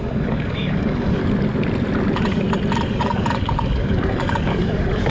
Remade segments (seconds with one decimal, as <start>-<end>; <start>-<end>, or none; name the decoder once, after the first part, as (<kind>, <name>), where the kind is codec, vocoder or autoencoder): 0.0-1.2 (codec, DAC); 2.9-5.1